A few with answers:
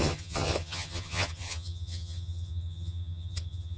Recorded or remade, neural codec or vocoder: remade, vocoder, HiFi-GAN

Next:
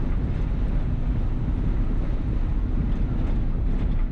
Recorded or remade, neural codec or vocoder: recorded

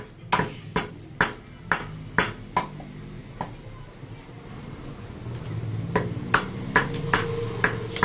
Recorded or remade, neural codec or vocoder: recorded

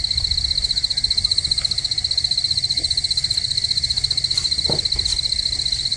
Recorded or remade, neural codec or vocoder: recorded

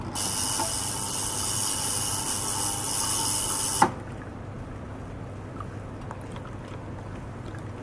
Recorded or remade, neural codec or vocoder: recorded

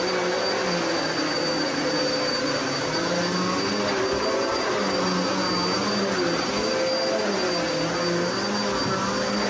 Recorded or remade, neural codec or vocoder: recorded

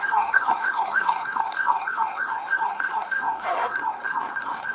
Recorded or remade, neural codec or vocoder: remade, codec, SNAC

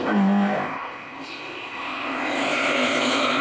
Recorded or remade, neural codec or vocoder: remade, codec, ZipCodec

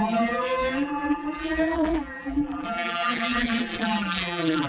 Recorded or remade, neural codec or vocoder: remade, vocoder, BigVGAN v2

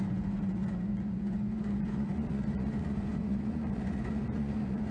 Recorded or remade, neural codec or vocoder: remade, vocoder, Vocos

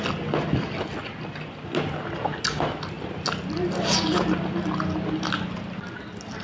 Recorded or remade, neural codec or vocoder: recorded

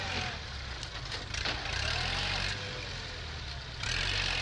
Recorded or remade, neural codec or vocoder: recorded